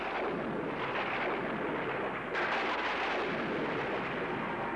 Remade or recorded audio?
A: recorded